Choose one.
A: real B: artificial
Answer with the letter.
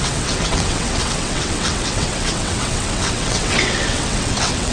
B